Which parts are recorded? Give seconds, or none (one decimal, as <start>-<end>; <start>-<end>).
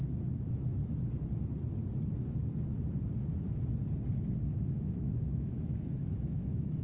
0.8-4.8